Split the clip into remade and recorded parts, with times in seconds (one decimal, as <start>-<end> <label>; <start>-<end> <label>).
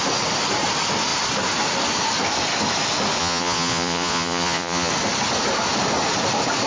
0.0-3.2 recorded; 3.2-4.9 remade; 4.9-6.7 recorded